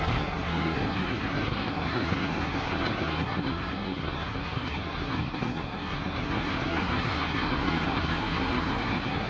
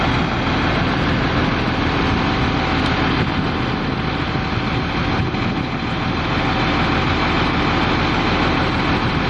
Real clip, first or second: second